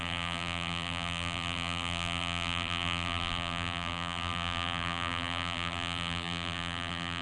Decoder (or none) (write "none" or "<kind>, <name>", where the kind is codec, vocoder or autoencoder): vocoder, BigVGAN v2